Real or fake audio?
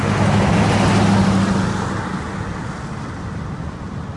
real